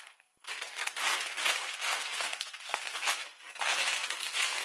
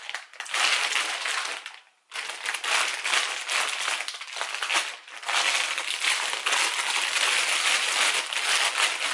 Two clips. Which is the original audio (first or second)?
second